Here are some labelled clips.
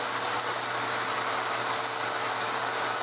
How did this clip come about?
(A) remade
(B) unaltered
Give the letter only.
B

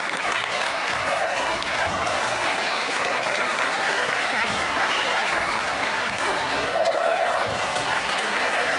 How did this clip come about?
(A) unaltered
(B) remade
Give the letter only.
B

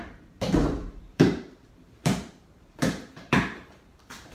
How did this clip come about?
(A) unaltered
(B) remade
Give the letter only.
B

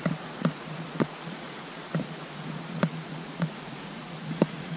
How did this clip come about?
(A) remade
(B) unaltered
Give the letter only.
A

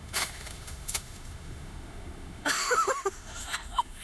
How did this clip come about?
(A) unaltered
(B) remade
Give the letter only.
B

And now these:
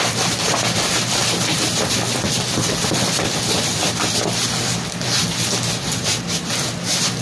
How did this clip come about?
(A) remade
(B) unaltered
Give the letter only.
A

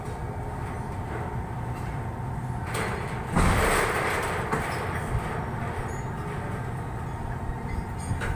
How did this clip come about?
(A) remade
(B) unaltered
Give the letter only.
B